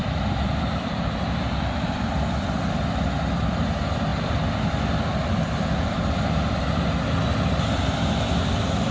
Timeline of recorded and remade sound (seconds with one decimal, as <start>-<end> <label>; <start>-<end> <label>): 0.0-2.5 remade; 2.5-4.1 recorded; 4.1-6.2 remade; 6.2-8.9 recorded